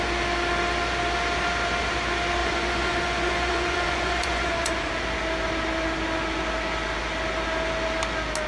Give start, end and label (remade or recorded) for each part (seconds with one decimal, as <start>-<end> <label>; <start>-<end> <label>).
0.0-2.4 recorded; 2.4-4.9 remade; 4.9-8.5 recorded

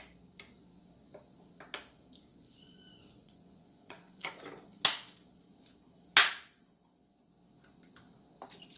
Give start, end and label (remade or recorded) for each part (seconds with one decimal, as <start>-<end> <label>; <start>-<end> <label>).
0.0-2.3 recorded; 2.3-4.4 remade; 4.4-8.8 recorded

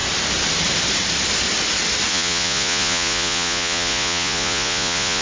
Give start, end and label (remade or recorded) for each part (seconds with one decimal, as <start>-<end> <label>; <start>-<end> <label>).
0.0-2.1 recorded; 2.1-5.2 remade

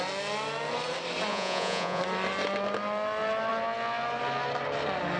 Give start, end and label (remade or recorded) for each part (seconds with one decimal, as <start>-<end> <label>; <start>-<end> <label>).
0.0-1.3 recorded; 1.3-2.0 remade; 2.0-5.2 recorded

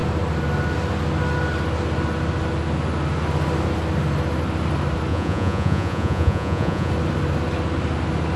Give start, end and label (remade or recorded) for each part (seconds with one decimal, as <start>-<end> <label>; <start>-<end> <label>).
0.0-5.1 recorded; 5.1-6.9 remade; 6.9-8.4 recorded